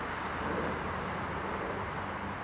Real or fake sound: real